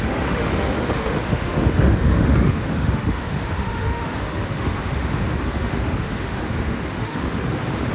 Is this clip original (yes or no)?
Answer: no